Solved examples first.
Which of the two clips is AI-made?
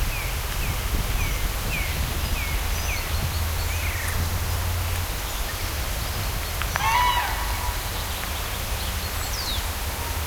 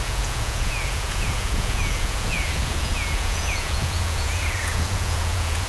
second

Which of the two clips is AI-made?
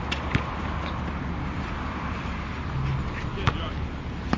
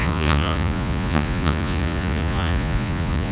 second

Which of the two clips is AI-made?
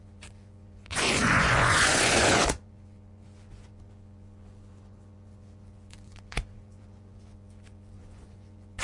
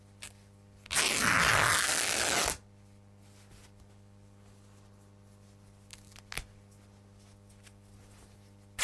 first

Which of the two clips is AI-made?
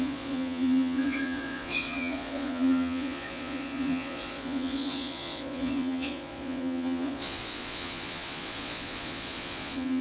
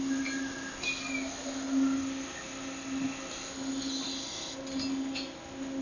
first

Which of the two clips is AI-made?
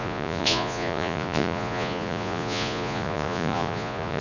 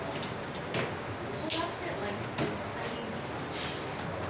first